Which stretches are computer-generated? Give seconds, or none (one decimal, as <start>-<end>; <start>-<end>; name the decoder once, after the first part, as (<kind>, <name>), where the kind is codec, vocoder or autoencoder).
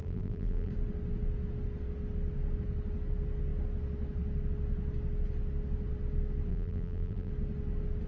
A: 0.0-0.7 (vocoder, BigVGAN v2); 6.5-7.3